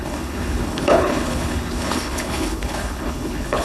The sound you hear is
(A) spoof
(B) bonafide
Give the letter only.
A